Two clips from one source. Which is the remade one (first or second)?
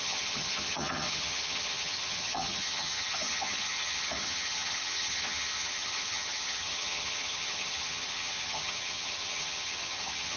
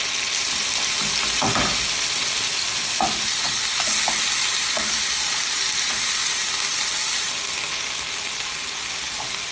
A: first